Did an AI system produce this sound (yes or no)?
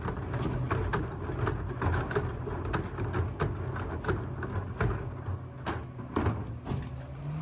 no